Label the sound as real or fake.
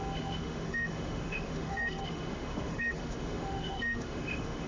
fake